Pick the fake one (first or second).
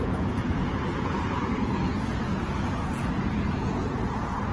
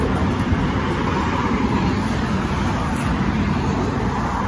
first